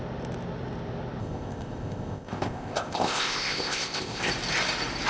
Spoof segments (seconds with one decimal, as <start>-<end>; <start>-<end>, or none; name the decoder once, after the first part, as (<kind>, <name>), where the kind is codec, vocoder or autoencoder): 1.2-4.3 (codec, ZipCodec)